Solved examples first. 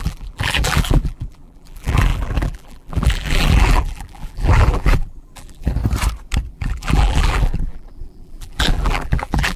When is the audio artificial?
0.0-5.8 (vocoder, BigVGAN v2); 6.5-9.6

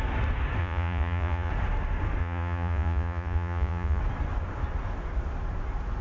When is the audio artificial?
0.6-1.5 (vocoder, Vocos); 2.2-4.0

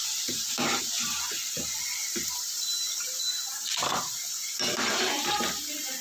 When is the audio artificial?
0.0-0.8 (vocoder, BigVGAN v2); 2.0-5.6

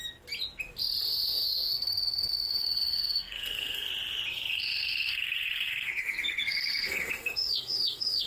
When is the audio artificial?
1.1-3.9 (codec, SNAC); 4.3-8.3